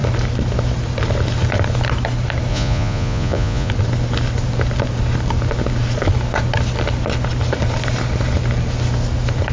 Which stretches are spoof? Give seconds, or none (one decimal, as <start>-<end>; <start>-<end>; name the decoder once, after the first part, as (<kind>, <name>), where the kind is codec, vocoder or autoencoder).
2.5-3.7 (vocoder, Vocos)